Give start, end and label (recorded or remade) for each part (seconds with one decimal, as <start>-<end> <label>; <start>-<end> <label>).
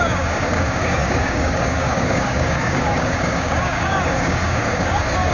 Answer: 0.0-5.3 remade